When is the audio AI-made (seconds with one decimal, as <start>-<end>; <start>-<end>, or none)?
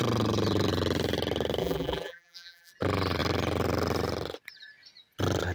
1.6-2.7